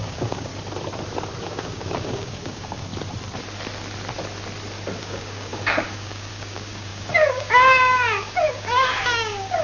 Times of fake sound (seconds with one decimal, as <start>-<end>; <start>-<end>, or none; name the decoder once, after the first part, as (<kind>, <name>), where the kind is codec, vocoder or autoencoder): 0.0-0.5 (codec, DAC); 1.4-2.9; 5.0-9.6

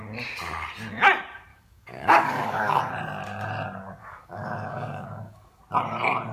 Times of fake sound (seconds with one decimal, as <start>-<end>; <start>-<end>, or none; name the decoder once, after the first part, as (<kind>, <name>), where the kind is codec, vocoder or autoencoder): 1.5-2.8 (codec, DAC); 4.0-5.6

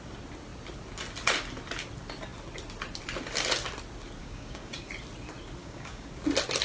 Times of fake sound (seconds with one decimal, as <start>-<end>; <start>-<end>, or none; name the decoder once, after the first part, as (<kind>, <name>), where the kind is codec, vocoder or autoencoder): 4.2-4.9 (codec, DAC); 5.6-6.1